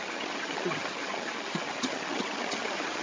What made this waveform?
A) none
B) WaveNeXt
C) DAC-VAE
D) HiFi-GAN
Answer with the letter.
D